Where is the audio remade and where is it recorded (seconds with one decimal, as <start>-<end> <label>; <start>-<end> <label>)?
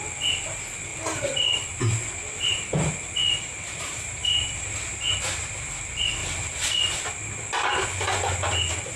0.0-0.9 recorded; 0.9-1.7 remade; 1.7-3.2 recorded; 3.2-5.7 remade; 5.7-6.2 recorded; 6.2-6.7 remade; 6.7-9.0 recorded